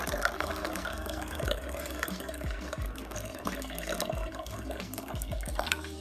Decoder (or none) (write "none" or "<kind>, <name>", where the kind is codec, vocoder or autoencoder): codec, SNAC